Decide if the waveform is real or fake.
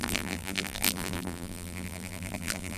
fake